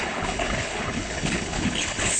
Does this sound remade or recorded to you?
remade